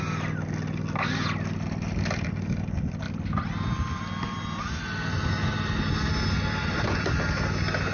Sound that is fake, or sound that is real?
real